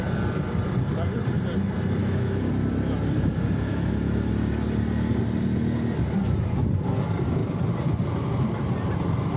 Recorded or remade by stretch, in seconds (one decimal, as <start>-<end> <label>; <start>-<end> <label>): 0.0-2.0 recorded; 2.0-2.5 remade; 2.5-3.7 recorded; 3.7-4.3 remade; 4.3-9.4 recorded